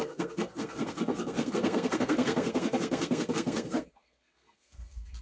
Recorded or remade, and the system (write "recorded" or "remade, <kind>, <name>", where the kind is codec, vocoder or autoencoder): remade, codec, SNAC